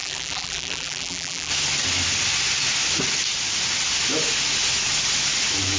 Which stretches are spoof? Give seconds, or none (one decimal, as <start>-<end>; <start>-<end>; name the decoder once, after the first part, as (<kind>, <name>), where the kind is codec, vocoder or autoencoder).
0.0-1.5 (vocoder, BigVGAN v2)